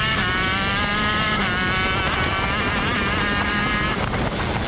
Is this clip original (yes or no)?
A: yes